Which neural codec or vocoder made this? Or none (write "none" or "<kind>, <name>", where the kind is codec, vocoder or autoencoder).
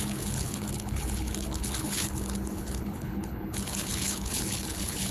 codec, HILCodec